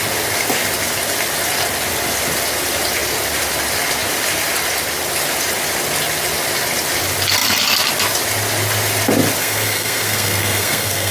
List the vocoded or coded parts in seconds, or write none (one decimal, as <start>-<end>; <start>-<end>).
9.4-11.1